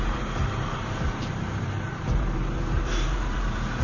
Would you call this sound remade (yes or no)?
yes